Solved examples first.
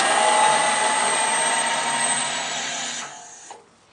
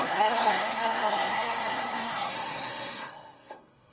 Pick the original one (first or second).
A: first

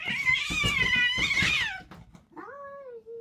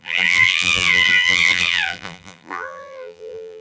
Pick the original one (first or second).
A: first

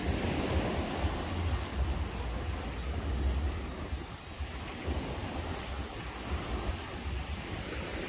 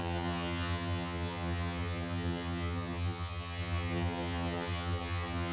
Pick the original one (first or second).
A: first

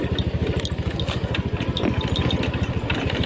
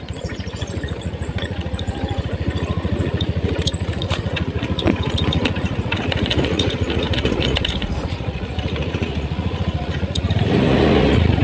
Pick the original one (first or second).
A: first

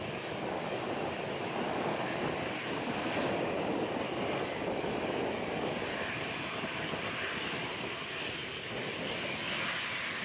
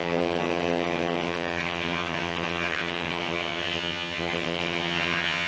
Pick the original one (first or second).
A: first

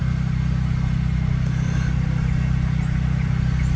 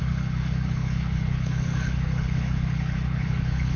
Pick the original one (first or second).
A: first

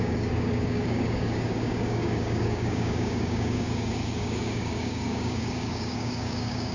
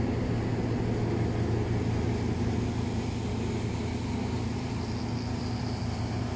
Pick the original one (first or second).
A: second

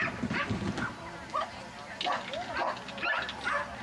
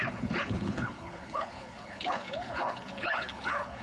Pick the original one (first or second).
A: first